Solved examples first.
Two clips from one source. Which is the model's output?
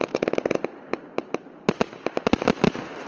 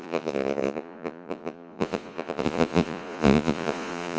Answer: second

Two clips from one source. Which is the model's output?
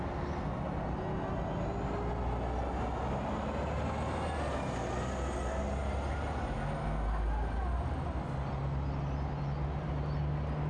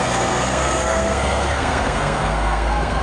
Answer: second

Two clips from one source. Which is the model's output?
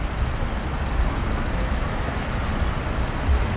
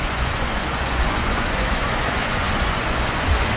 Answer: second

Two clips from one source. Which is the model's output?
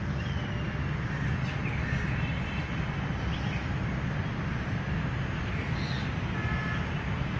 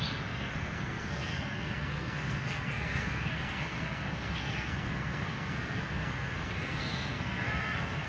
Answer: second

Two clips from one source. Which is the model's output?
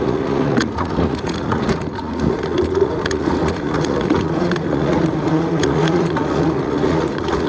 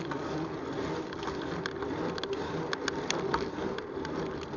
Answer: first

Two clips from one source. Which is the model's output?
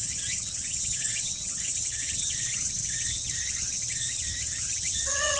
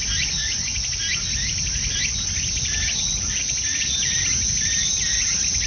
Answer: first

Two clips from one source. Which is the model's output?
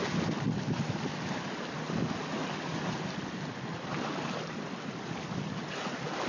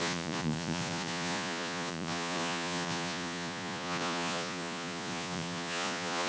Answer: second